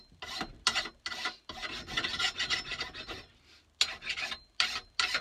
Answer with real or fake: real